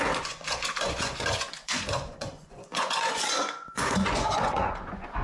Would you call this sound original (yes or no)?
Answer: no